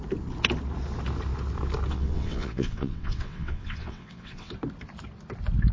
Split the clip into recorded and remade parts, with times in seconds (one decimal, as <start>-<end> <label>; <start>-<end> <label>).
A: 0.0-1.9 recorded; 1.9-4.5 remade; 4.5-5.7 recorded